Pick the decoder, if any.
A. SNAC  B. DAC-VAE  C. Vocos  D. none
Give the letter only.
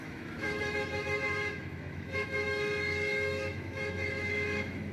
B